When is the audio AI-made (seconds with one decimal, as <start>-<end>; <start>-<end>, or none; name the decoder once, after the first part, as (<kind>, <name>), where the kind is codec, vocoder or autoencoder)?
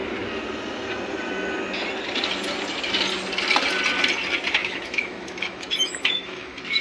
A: 4.6-6.8 (autoencoder, DAC-VAE)